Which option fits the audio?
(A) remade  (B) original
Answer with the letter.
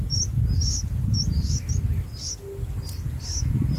B